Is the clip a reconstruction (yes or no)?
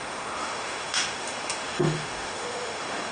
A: yes